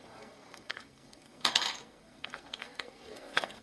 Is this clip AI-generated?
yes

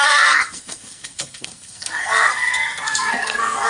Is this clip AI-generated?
yes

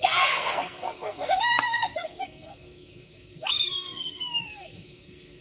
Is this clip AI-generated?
yes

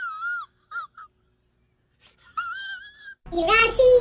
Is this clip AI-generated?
no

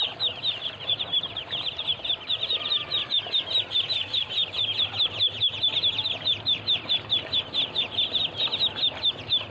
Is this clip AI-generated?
no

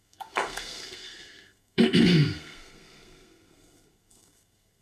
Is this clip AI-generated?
yes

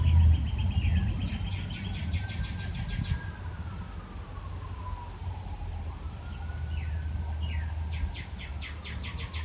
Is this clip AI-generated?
no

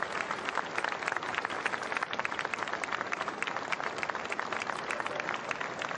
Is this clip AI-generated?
yes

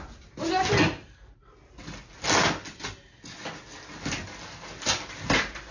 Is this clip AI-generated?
no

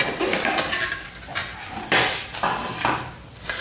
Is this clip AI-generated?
no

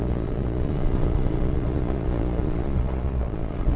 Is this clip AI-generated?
yes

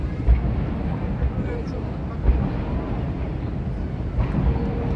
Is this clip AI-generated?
no